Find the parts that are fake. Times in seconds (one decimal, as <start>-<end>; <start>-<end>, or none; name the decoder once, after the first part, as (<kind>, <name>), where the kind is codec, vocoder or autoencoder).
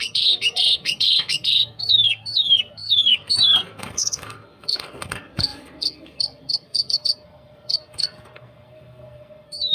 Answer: 0.0-9.7 (codec, SNAC)